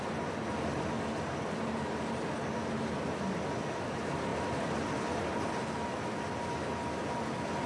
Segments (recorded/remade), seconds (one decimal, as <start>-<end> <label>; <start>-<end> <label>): 0.0-7.7 recorded